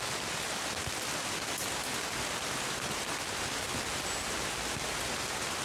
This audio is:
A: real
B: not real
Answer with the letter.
A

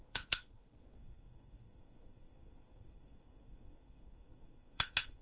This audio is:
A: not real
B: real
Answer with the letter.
A